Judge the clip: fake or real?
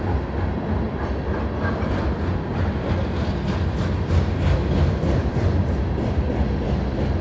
real